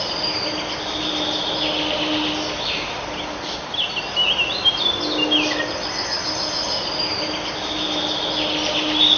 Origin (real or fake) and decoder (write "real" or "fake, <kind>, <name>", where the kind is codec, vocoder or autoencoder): real